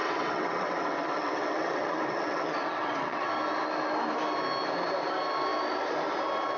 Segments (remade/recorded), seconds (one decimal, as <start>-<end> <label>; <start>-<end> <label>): 0.0-3.3 remade; 3.3-6.6 recorded